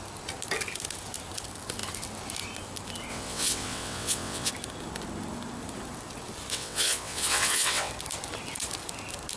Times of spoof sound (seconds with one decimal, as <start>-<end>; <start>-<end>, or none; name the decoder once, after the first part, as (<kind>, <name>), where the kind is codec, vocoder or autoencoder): 3.1-4.5 (vocoder, WaveNeXt); 6.5-7.9